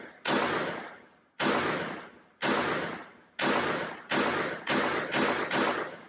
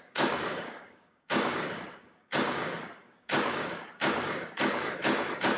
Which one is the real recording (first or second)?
first